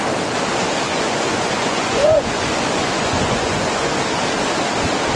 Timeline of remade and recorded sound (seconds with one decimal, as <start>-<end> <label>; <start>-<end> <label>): 0.0-0.9 recorded; 0.9-3.9 remade; 3.9-5.2 recorded